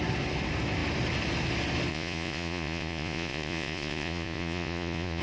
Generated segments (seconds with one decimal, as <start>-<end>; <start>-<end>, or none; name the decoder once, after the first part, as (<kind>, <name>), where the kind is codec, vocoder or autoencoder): 1.9-5.2 (vocoder, Vocos)